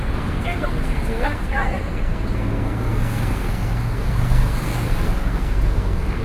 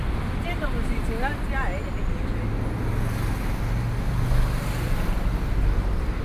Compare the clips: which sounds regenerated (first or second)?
first